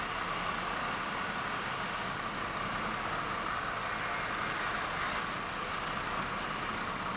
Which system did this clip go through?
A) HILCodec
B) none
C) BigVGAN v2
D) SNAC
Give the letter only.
B